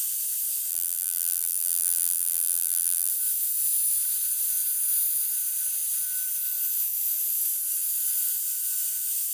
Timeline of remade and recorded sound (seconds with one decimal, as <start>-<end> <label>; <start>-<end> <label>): 0.0-0.7 recorded; 0.7-3.1 remade; 3.1-9.3 recorded

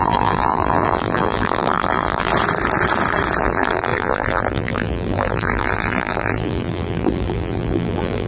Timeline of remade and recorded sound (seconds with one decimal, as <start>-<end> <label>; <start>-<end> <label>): 0.0-2.3 remade; 2.3-3.4 recorded; 3.4-8.3 remade